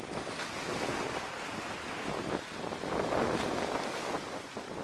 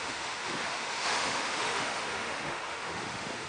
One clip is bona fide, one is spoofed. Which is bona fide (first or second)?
first